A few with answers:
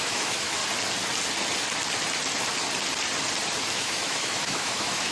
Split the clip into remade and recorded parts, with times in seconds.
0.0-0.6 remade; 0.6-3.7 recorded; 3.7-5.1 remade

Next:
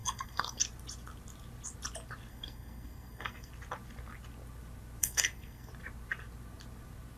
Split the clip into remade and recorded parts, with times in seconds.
0.0-0.6 remade; 0.6-2.3 recorded; 2.3-3.5 remade; 3.5-5.0 recorded; 5.0-5.7 remade; 5.7-7.2 recorded

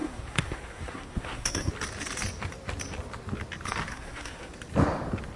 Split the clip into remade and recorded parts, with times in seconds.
0.0-1.7 remade; 1.7-3.9 recorded; 3.9-4.5 remade; 4.5-5.4 recorded